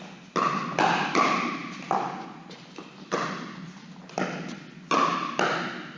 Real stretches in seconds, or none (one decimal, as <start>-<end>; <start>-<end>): 0.0-6.0

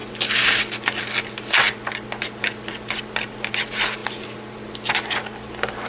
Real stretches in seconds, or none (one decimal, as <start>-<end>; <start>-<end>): 0.0-5.9

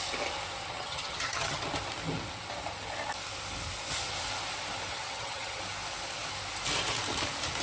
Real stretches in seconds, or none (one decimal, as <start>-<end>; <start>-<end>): 0.0-0.7; 1.6-4.9; 5.6-7.6